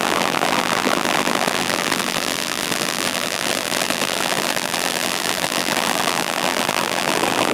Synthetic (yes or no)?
yes